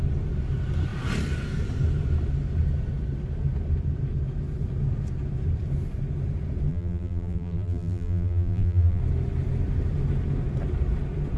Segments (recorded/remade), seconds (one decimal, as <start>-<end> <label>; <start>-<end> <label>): 0.0-6.7 recorded; 6.7-9.0 remade; 9.0-11.4 recorded